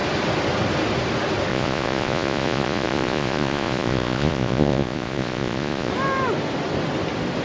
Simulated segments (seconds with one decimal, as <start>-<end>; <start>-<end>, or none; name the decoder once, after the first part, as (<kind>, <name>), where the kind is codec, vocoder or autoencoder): 1.5-5.9 (vocoder, Vocos)